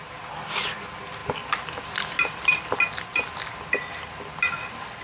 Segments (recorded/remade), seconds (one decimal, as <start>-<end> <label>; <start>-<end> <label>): 0.0-5.0 recorded